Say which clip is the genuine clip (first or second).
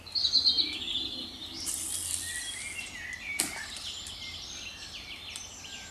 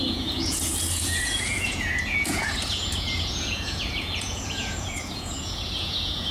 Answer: first